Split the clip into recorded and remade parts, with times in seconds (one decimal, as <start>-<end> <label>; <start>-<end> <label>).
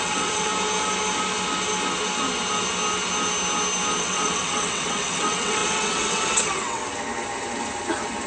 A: 0.0-0.5 remade; 0.5-4.0 recorded; 4.0-6.8 remade; 6.8-8.3 recorded